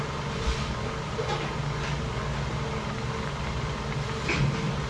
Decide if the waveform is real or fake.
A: real